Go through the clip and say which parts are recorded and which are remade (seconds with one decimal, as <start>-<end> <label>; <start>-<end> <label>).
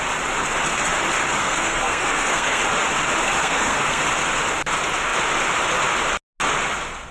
0.0-1.4 recorded; 1.4-2.6 remade; 2.6-3.4 recorded; 3.4-4.0 remade; 4.0-7.1 recorded